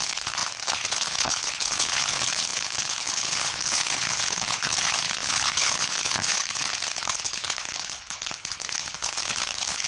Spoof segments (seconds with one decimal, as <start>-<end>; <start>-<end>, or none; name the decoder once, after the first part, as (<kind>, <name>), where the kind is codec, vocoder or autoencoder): 0.0-9.9 (codec, HILCodec)